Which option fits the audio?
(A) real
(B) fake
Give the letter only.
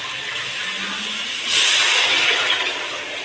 A